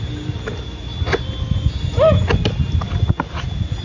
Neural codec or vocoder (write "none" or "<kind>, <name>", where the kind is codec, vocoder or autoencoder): none